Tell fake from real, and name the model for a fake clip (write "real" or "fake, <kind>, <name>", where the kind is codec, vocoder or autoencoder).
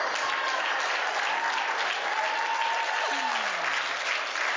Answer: real